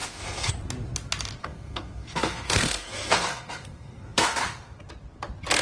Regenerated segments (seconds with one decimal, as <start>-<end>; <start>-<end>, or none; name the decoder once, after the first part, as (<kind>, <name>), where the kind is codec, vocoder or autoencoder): 0.0-0.5 (codec, SNAC); 1.4-4.8